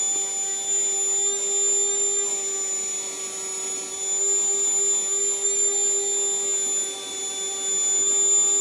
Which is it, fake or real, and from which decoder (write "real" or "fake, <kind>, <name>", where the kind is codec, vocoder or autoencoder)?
real